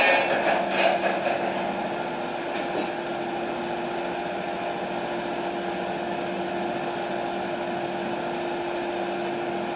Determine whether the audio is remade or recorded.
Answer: recorded